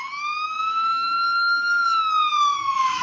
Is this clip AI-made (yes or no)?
yes